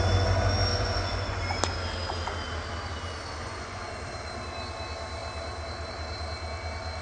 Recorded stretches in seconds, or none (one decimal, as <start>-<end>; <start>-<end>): 0.0-0.7; 1.4-3.4; 3.9-7.0